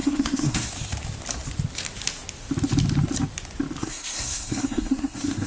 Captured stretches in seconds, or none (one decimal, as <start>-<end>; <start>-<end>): 0.7-3.8